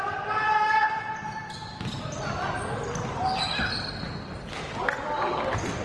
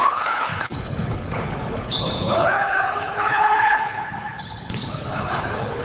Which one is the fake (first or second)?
second